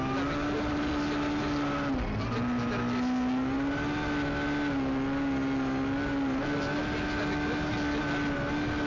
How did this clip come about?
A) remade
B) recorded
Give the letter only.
B